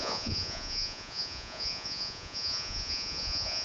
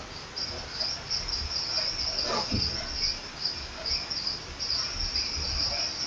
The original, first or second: second